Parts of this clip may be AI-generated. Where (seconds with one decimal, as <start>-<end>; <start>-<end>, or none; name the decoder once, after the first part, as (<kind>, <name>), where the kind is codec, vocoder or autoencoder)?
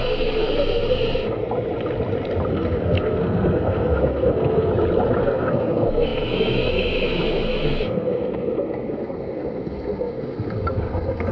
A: 0.0-1.4 (codec, SNAC); 2.5-4.7; 5.2-11.3